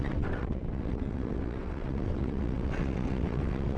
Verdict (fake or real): fake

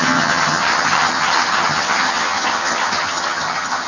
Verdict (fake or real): fake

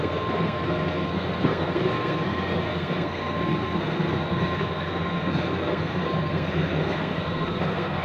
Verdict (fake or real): fake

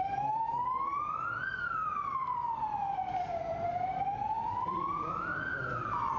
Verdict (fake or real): fake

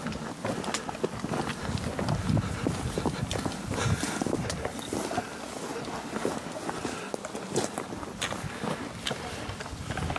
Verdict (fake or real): real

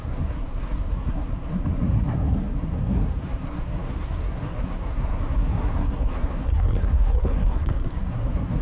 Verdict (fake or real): fake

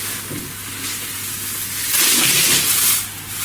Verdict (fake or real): real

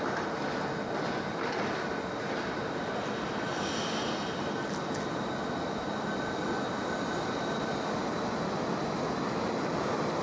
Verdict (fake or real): real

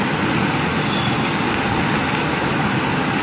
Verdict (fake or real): real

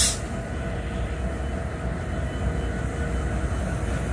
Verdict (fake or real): real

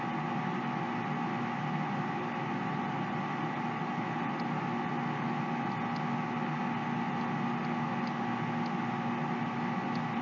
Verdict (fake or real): real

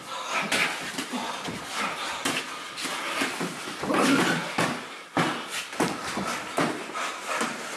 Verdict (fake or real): real